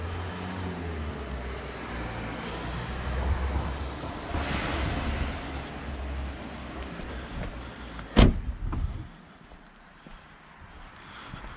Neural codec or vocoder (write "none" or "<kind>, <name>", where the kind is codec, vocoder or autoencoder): none